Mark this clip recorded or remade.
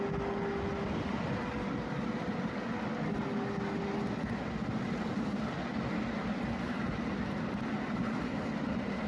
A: recorded